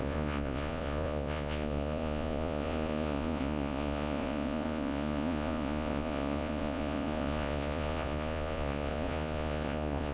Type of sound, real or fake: fake